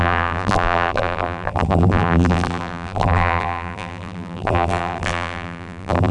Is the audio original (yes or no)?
no